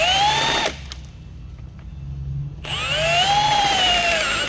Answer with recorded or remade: recorded